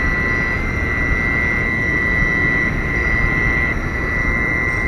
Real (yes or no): yes